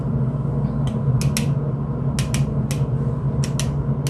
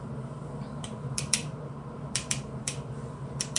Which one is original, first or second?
first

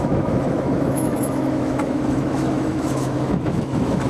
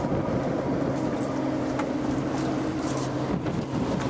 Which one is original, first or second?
second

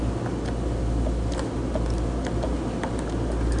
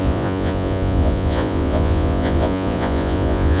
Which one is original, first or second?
first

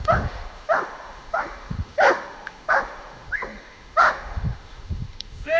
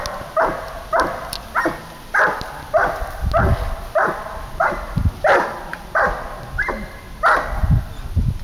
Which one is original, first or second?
second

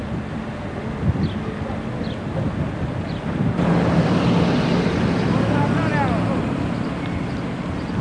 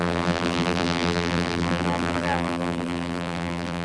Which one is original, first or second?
first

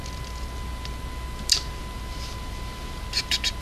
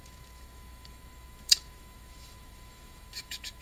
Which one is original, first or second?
first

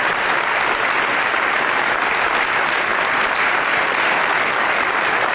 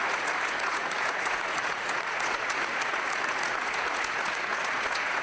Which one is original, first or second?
first